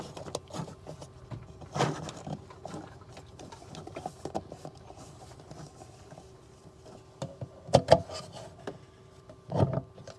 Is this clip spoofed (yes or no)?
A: no